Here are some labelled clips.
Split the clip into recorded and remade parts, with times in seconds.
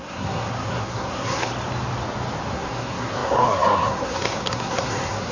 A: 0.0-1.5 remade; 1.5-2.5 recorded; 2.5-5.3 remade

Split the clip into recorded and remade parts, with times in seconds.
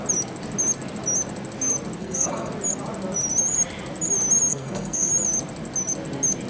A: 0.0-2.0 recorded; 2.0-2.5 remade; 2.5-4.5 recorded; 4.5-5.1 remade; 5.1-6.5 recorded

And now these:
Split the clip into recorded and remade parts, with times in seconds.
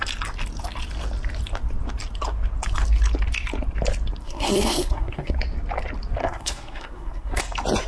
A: 0.0-4.2 recorded; 4.2-5.3 remade; 5.3-6.2 recorded; 6.2-7.4 remade; 7.4-7.9 recorded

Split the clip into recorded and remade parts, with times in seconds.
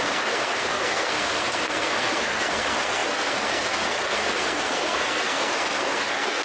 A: 0.0-6.4 remade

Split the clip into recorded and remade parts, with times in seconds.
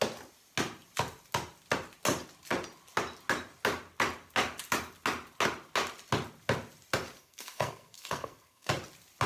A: 0.0-7.2 recorded; 7.2-8.7 remade; 8.7-9.3 recorded